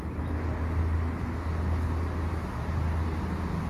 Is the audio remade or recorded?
recorded